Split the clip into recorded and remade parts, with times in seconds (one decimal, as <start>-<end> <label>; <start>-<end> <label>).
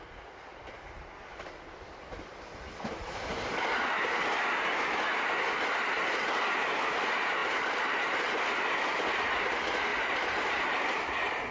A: 0.0-7.4 recorded; 7.4-8.4 remade; 8.4-9.9 recorded; 9.9-10.8 remade; 10.8-11.5 recorded